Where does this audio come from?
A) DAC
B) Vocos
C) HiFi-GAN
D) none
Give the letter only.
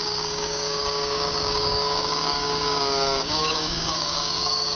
A